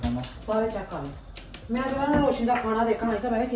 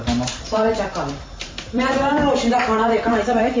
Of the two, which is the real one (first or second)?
first